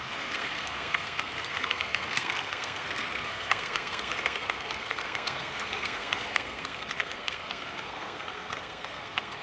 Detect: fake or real fake